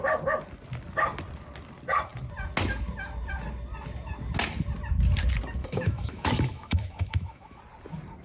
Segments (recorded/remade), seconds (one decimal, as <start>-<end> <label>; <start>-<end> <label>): 0.0-5.6 recorded; 5.6-7.6 remade; 7.6-8.2 recorded